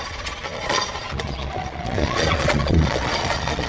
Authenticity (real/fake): fake